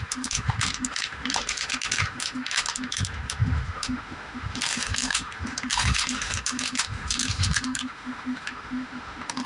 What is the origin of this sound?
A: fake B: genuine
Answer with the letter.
A